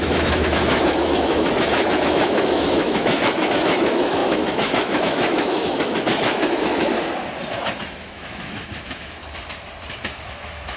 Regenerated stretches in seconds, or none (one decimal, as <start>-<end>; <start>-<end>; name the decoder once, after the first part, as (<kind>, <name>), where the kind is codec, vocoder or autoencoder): 0.0-6.9 (autoencoder, DAC-VAE); 7.8-9.2; 9.9-10.8